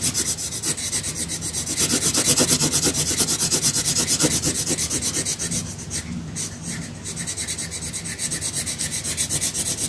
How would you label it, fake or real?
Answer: real